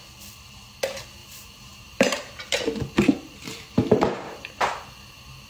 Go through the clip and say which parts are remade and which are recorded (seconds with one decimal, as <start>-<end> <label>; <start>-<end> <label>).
0.0-1.2 recorded; 1.2-4.5 remade; 4.5-5.5 recorded